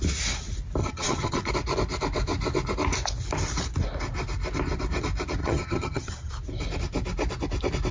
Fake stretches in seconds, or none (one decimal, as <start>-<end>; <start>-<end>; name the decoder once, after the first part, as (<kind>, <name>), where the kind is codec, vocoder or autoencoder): 0.8-1.5 (vocoder, HiFi-GAN); 5.4-6.3